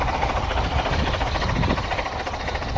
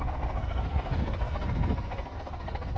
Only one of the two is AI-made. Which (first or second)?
second